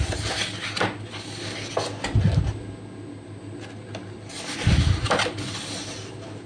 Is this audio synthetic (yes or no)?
no